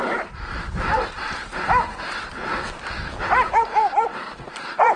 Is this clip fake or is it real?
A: real